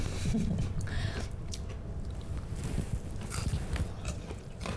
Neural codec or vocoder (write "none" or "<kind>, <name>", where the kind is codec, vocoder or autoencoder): vocoder, BigVGAN v2